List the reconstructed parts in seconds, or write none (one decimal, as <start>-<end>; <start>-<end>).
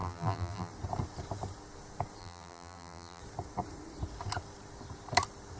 0.0-0.7; 2.2-3.2